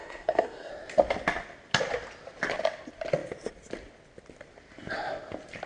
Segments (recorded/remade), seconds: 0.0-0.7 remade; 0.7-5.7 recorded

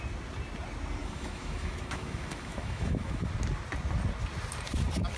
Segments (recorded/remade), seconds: 0.0-1.0 recorded; 1.0-3.3 remade; 3.3-5.2 recorded

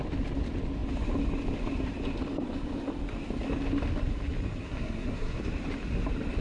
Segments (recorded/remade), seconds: 0.0-4.6 recorded; 4.6-5.4 remade; 5.4-6.4 recorded